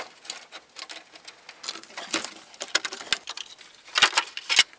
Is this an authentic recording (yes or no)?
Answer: yes